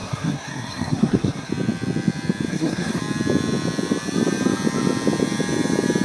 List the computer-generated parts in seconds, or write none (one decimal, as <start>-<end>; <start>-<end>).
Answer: 0.0-1.5; 2.5-3.0